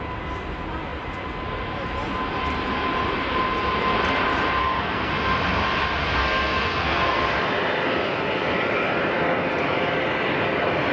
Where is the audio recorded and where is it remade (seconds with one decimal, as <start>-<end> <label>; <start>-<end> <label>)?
0.0-4.6 recorded; 4.6-5.1 remade; 5.1-6.2 recorded; 6.2-7.2 remade; 7.2-10.9 recorded